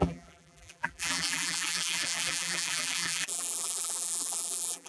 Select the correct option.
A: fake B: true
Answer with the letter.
A